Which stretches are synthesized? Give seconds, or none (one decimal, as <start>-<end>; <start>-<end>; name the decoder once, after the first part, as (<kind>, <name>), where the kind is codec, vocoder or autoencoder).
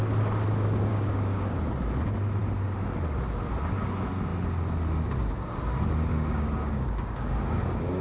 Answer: 0.9-1.5 (codec, DAC); 6.1-8.0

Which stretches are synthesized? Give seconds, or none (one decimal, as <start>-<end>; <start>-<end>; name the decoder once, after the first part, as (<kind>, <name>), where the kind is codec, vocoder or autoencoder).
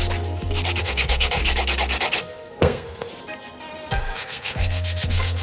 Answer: 0.8-1.4 (codec, SNAC); 2.2-3.1; 3.9-5.4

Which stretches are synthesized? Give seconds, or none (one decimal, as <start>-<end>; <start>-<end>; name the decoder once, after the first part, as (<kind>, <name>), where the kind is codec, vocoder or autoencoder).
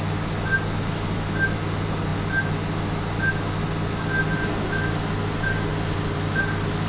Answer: 5.7-6.3 (vocoder, BigVGAN v2)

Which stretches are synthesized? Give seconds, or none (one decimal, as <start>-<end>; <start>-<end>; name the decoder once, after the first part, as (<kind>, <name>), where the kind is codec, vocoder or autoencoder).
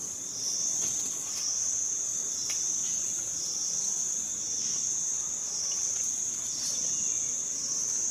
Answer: 0.0-1.5 (vocoder, BigVGAN v2); 2.1-4.3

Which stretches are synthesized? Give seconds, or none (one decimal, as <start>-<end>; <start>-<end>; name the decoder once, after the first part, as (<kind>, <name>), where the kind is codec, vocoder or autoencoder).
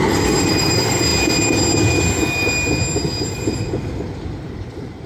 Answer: 0.0-1.1 (vocoder, BigVGAN v2); 4.2-5.1